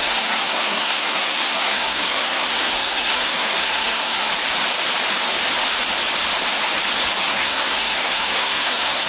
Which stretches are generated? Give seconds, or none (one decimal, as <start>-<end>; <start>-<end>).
0.0-4.3; 7.2-9.1